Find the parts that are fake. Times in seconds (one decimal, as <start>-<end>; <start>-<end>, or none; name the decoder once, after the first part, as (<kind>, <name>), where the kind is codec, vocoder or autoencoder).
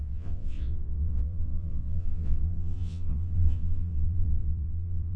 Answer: 0.0-5.2 (vocoder, WaveNeXt)